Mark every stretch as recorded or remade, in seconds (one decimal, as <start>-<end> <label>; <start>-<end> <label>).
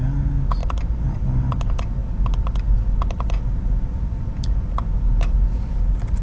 0.0-6.2 recorded